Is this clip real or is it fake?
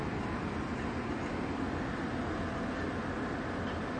real